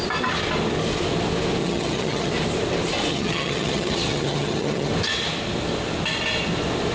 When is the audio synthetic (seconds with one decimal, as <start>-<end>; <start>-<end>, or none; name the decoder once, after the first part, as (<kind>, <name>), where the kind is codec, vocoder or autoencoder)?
1.6-2.3 (vocoder, HiFi-GAN); 3.1-4.9